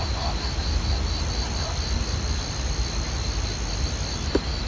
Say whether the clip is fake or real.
real